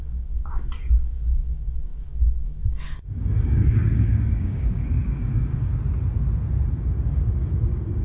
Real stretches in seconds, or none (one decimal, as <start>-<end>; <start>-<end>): 5.7-6.7